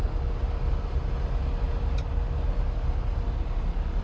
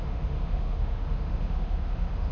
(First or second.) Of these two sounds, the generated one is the second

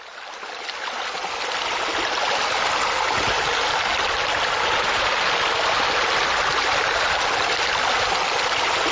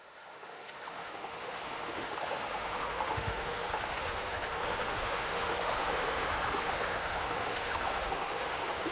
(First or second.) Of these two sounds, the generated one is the second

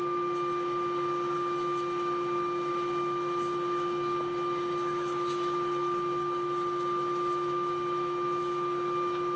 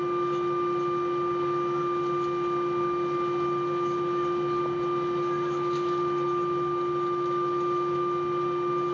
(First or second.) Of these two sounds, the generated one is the first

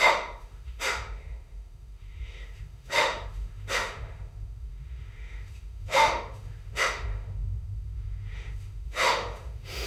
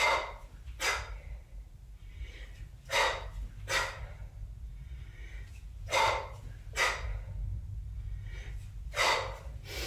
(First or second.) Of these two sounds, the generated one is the first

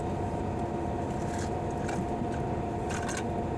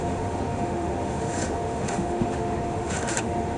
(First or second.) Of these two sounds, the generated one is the second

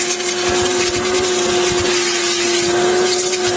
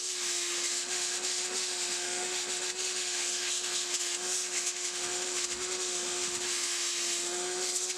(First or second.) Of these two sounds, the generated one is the second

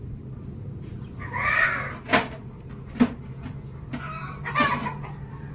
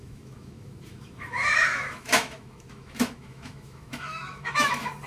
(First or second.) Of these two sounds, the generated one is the second